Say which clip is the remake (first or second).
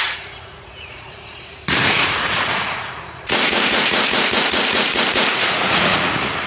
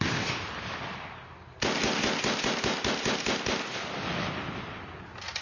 first